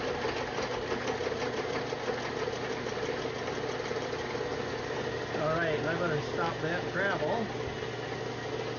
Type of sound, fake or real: real